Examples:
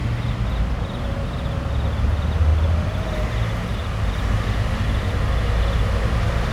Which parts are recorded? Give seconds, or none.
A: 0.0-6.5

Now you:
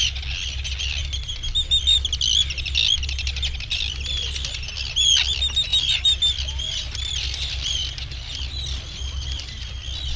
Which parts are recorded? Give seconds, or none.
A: 0.0-10.2

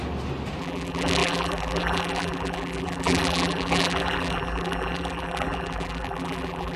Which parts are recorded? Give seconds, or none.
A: 0.0-0.6